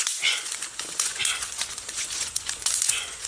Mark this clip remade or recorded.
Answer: remade